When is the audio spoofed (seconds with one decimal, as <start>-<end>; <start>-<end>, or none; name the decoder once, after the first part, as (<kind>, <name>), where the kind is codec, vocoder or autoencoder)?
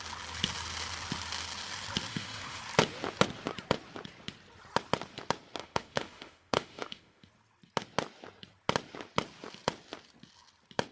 2.1-2.6 (autoencoder, DAC-VAE); 5.6-7.3